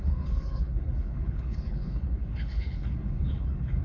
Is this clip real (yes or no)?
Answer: no